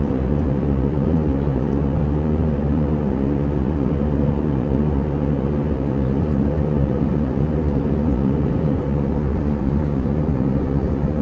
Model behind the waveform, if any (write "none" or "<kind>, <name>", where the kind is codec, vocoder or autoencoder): vocoder, Vocos